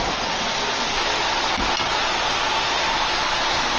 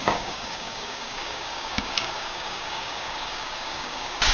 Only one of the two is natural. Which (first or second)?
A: first